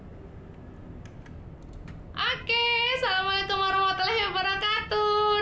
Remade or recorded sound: recorded